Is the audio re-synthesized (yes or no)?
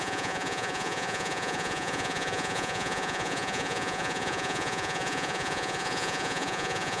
yes